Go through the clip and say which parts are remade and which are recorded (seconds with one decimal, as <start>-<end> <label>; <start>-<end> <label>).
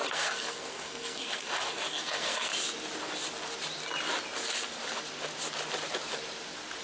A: 0.0-2.5 remade; 2.5-6.8 recorded